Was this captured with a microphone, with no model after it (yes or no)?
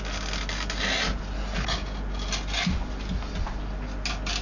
yes